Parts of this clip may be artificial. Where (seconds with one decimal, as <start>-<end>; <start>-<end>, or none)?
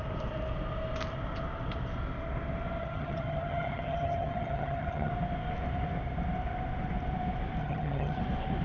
2.8-5.1; 7.6-8.2